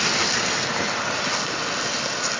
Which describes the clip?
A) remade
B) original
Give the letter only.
B